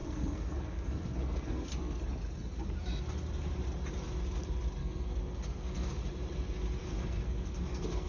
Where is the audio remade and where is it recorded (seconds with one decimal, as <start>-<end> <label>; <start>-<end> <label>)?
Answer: 0.0-2.0 remade; 2.0-4.8 recorded; 4.8-5.9 remade; 5.9-6.8 recorded; 6.8-8.1 remade